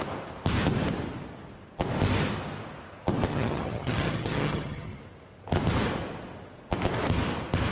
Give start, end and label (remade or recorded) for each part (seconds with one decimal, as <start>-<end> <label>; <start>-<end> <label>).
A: 0.0-3.3 recorded; 3.3-5.0 remade; 5.0-7.7 recorded